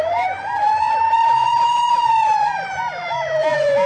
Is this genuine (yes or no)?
no